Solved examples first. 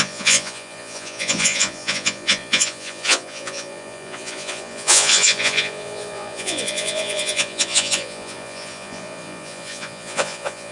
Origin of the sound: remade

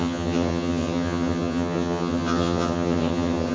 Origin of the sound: remade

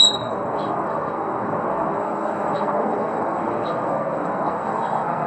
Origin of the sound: remade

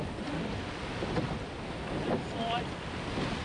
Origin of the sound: recorded